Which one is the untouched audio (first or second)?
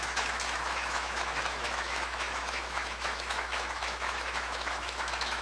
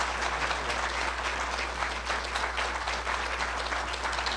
second